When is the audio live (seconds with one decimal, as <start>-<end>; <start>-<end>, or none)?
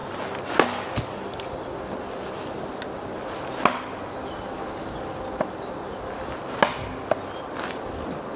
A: 0.0-8.4